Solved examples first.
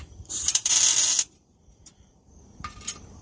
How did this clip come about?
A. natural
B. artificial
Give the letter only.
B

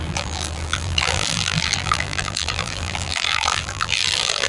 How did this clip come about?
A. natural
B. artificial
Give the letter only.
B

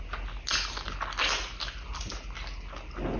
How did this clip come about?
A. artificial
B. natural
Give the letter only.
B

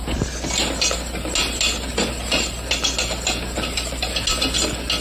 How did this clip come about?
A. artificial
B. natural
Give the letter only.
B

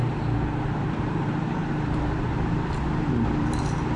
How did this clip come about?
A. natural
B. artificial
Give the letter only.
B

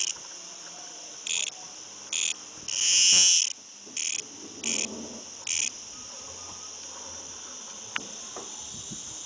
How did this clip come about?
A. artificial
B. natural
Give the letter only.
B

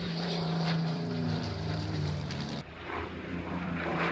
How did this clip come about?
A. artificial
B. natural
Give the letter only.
A